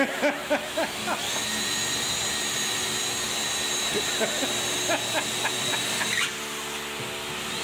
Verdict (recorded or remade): recorded